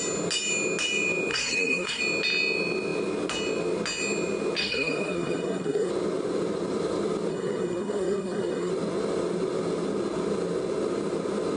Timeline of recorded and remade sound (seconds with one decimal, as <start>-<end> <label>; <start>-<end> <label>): 0.0-1.3 recorded; 1.3-2.0 remade; 2.0-4.6 recorded; 4.6-5.9 remade; 5.9-7.3 recorded; 7.3-8.7 remade; 8.7-11.6 recorded